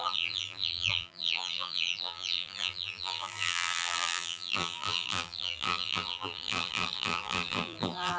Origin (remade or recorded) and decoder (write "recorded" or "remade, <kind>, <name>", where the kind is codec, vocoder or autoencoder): remade, vocoder, BigVGAN v2